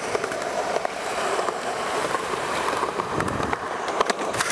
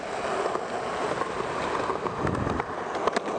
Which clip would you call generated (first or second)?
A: first